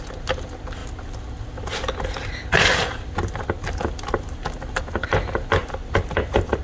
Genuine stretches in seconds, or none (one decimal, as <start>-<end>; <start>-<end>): 0.0-5.6